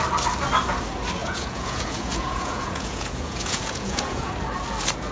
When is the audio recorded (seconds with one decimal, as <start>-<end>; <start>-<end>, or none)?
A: 0.0-1.2; 4.3-5.1